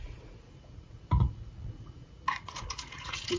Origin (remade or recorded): remade